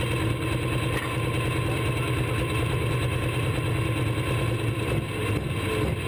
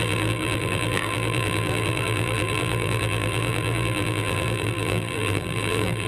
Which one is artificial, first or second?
second